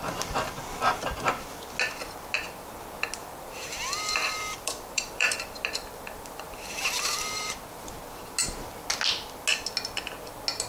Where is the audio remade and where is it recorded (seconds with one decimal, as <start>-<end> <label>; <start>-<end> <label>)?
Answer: 0.0-3.2 recorded; 3.2-7.9 remade; 7.9-10.7 recorded